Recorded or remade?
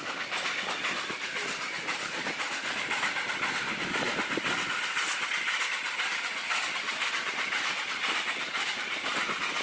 recorded